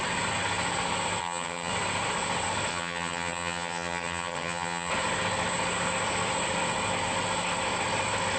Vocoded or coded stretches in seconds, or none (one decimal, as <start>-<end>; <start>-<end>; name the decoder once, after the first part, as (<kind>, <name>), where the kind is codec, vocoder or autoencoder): 1.2-1.7 (vocoder, HiFi-GAN); 2.7-4.9